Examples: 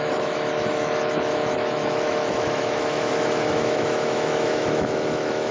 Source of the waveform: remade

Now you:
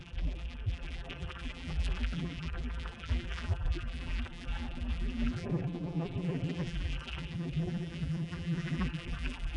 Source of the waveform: remade